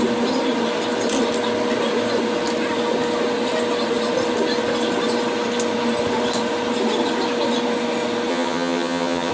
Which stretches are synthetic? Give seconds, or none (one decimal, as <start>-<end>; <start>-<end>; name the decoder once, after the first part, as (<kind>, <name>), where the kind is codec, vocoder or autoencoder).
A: 8.3-9.3 (vocoder, HiFi-GAN)